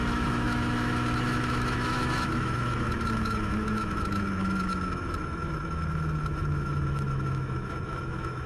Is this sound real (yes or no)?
no